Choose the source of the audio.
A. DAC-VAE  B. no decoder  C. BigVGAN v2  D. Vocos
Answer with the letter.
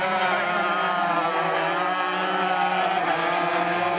B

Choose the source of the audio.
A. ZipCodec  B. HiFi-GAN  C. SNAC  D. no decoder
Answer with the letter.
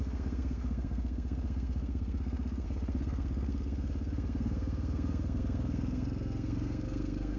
C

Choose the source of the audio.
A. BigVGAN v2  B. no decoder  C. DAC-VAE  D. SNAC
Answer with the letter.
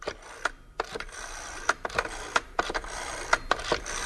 A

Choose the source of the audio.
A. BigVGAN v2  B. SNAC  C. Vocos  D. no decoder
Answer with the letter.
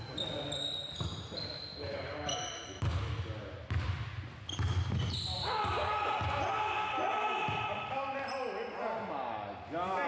D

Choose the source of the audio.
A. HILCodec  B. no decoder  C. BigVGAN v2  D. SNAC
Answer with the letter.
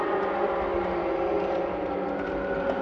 B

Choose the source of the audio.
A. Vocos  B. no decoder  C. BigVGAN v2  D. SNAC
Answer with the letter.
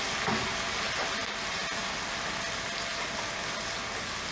B